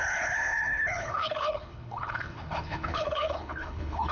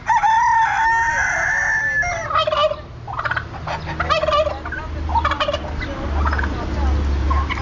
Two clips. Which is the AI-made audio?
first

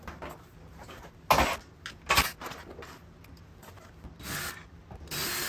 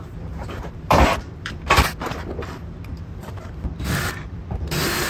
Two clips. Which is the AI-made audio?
second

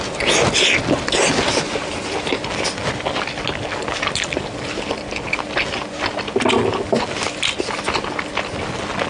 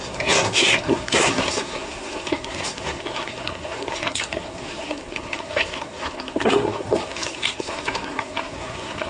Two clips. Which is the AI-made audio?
second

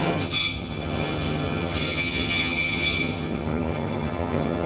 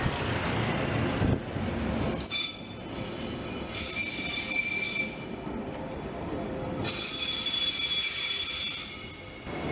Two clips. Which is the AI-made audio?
first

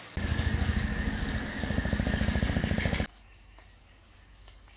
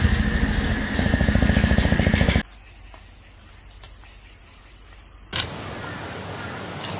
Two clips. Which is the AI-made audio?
first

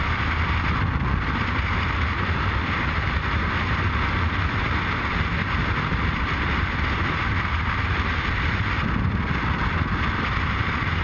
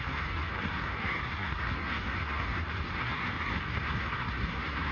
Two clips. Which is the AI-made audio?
second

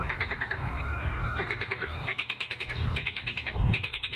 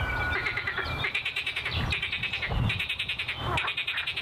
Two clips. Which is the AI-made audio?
first